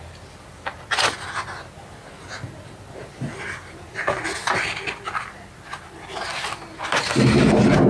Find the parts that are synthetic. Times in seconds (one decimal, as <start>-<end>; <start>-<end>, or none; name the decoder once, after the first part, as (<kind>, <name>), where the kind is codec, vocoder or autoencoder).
6.3-7.0 (vocoder, BigVGAN v2)